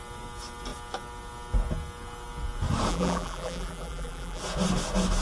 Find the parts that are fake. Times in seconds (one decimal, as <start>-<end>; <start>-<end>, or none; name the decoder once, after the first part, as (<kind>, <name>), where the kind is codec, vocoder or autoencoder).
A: 2.9-4.4 (vocoder, BigVGAN v2)